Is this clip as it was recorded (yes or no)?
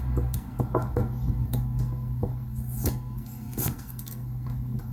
no